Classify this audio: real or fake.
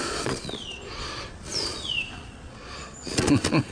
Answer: fake